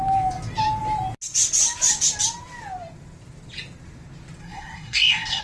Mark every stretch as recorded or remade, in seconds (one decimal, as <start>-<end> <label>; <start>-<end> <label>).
0.0-4.4 recorded; 4.4-5.4 remade